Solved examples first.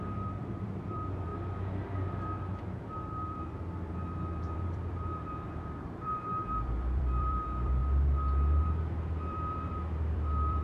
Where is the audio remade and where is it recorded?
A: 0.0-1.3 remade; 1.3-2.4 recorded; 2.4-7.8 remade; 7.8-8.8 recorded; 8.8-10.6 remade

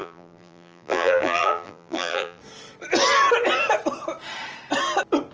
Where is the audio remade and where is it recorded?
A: 0.0-2.4 remade; 2.4-5.3 recorded